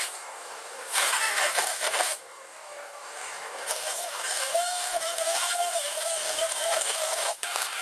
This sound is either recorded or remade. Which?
remade